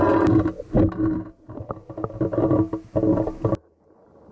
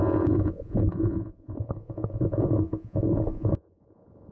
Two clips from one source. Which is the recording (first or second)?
first